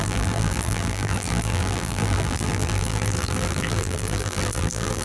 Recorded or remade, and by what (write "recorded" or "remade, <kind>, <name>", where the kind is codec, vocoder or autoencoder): remade, vocoder, BigVGAN v2